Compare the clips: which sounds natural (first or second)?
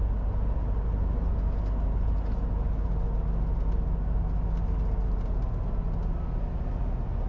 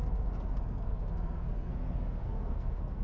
first